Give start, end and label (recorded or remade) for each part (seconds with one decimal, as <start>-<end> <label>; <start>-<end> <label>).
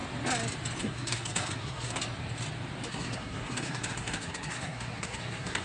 0.0-0.8 recorded; 0.8-2.0 remade; 2.0-2.9 recorded; 2.9-5.6 remade